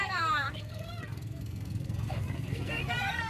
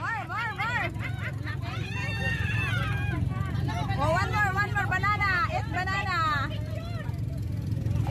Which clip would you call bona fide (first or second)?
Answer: second